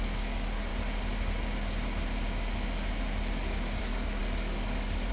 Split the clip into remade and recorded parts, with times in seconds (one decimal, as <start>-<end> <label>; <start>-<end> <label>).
0.0-0.7 remade; 0.7-3.8 recorded; 3.8-5.1 remade